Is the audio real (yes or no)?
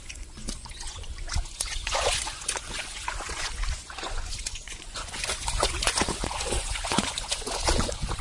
no